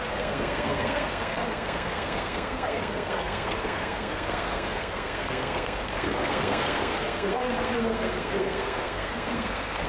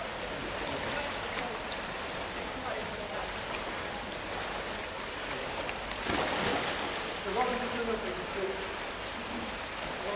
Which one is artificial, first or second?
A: first